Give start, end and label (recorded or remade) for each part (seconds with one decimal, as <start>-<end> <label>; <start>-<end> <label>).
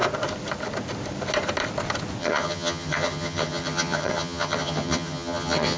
0.0-2.2 recorded; 2.2-5.8 remade